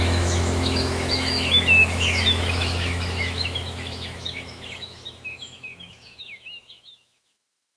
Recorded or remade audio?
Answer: remade